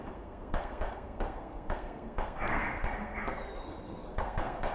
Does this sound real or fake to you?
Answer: fake